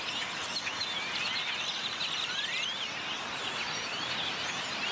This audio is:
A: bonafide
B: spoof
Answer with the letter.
A